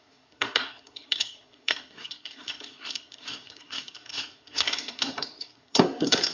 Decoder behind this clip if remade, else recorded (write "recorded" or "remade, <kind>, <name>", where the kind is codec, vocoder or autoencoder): remade, codec, SNAC